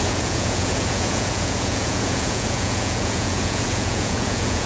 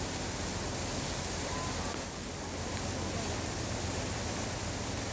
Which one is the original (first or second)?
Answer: second